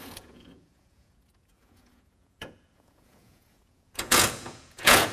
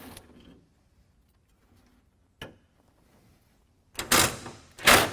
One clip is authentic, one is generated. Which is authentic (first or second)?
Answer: second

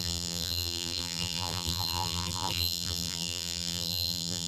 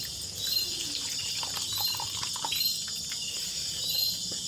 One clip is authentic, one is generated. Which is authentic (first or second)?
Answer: second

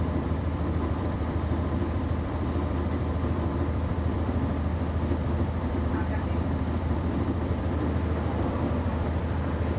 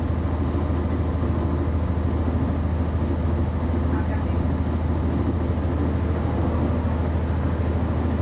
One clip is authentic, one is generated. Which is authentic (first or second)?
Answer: second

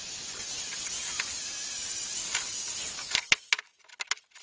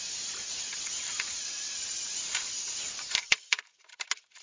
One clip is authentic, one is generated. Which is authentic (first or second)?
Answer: first